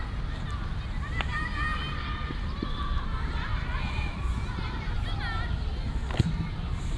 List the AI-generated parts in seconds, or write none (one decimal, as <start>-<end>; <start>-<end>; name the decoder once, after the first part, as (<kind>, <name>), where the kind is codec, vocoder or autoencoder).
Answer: none